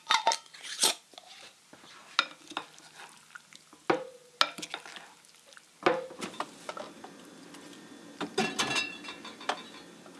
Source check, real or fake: real